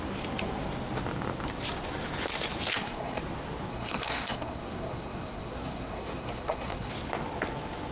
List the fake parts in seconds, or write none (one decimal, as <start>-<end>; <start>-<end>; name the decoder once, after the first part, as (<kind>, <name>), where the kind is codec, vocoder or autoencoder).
2.7-3.2 (codec, SNAC); 3.7-6.9